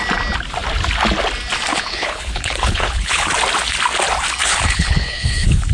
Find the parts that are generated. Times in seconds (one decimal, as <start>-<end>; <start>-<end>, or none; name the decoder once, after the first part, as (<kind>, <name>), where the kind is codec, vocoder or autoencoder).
1.7-3.3 (codec, HILCodec); 4.4-5.7